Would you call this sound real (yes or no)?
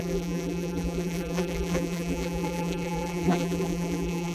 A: no